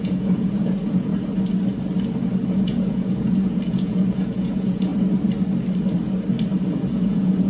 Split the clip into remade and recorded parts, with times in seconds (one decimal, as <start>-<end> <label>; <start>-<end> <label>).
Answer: 0.0-1.1 remade; 1.1-2.5 recorded; 2.5-4.9 remade; 4.9-6.6 recorded; 6.6-7.5 remade